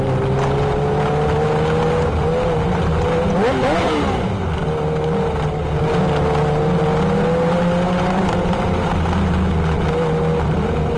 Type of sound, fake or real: real